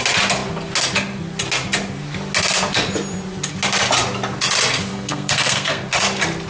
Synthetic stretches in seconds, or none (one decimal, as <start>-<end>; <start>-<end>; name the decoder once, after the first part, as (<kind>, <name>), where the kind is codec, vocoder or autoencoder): 4.9-5.8 (codec, SNAC)